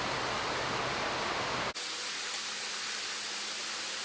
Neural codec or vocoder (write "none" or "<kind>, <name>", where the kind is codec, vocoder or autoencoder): none